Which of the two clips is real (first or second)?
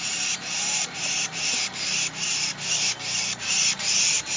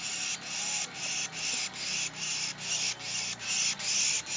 second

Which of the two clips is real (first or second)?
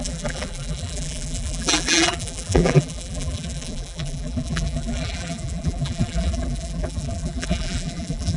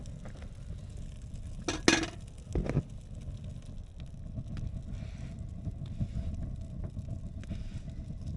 second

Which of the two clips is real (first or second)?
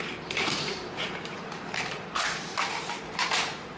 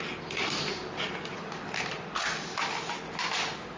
second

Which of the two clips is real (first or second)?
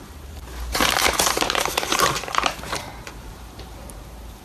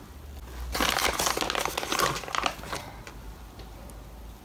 second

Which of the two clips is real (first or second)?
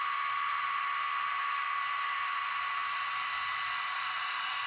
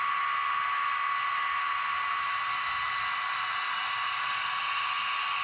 second